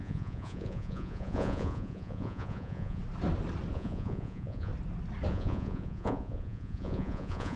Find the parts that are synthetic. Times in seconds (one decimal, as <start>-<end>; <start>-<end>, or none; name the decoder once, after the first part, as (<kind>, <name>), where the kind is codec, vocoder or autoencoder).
0.0-3.0 (vocoder, Vocos); 3.7-4.7; 5.3-7.6